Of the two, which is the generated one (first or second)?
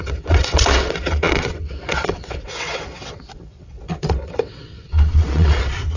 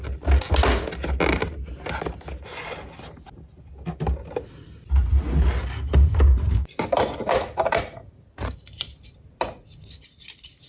first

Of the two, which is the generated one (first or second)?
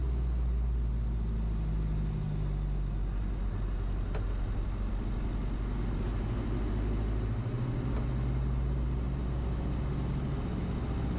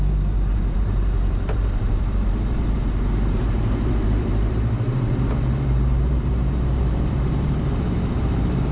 second